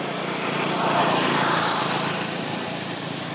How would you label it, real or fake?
fake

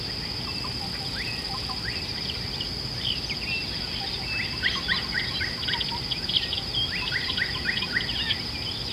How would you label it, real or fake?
real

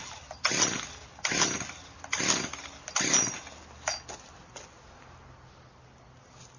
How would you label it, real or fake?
real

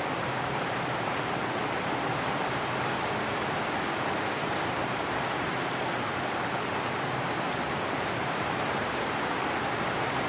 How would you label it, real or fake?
fake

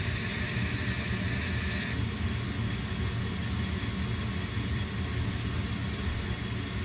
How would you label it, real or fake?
real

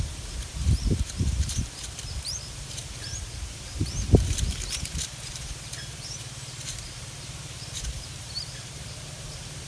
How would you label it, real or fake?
fake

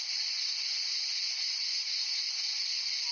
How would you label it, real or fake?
real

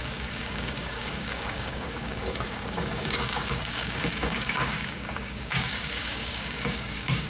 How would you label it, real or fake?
fake